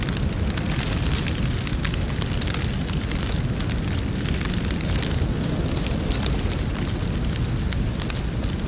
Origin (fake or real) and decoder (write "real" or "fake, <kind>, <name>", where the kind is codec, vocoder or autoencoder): real